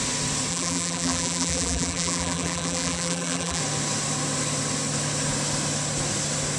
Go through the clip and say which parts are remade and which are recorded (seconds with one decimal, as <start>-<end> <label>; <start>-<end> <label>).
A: 0.0-0.5 recorded; 0.5-3.6 remade; 3.6-6.6 recorded